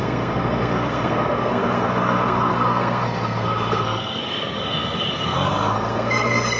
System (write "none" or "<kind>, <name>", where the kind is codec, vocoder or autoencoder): codec, SNAC